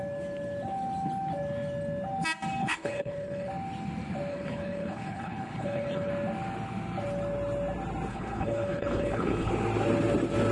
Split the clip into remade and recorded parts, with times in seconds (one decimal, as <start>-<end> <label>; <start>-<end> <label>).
0.0-2.6 recorded; 2.6-3.5 remade; 3.5-4.3 recorded; 4.3-6.1 remade; 6.1-8.1 recorded; 8.1-9.5 remade; 9.5-10.5 recorded